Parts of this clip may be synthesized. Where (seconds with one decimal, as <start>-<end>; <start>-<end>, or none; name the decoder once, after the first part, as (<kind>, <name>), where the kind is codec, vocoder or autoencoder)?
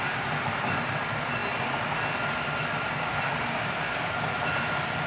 none